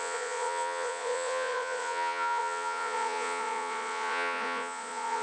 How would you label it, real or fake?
fake